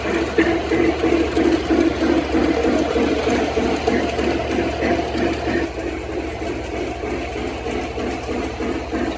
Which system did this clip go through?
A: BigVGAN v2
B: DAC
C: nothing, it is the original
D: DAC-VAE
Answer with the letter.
C